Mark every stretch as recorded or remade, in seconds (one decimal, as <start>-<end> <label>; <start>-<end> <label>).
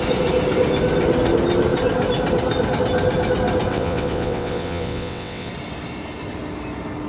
0.0-3.7 recorded; 3.7-5.5 remade; 5.5-7.1 recorded